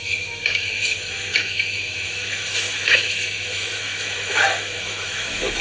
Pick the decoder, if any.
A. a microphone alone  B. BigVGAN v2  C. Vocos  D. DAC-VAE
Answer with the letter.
D